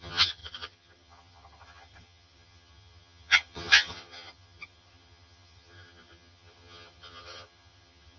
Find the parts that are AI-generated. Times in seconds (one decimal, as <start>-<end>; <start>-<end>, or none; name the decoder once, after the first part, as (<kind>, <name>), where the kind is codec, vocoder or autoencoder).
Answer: 0.0-8.2 (vocoder, HiFi-GAN)